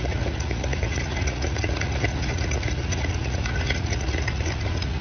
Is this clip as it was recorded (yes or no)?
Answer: no